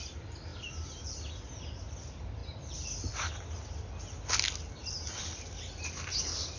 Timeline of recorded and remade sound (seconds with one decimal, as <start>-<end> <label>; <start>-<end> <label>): 0.0-6.6 recorded